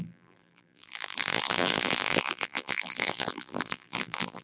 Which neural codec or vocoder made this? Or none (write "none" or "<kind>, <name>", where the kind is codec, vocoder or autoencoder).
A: vocoder, BigVGAN v2